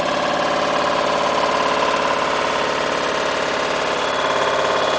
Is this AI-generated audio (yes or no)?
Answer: no